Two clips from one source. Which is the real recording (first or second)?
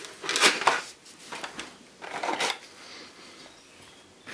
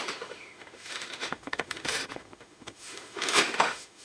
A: first